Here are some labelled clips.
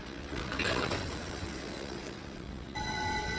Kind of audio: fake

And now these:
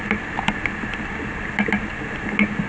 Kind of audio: real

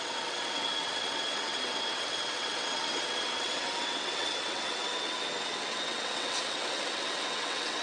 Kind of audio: fake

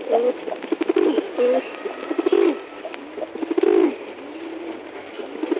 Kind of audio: real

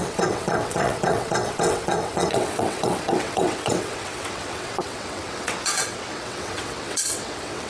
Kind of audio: fake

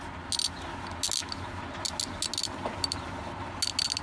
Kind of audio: real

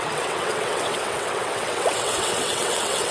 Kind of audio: fake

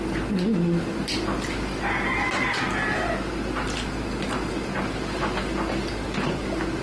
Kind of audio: real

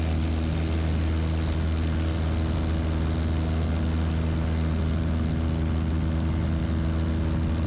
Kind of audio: real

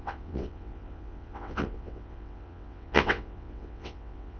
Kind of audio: fake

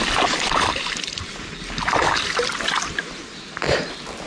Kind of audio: real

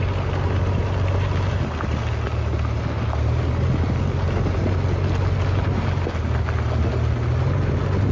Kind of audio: real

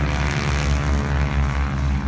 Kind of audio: real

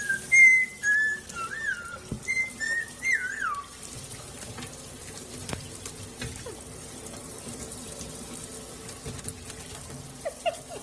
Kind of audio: real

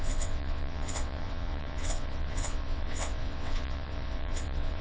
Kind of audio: fake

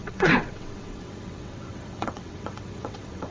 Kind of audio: fake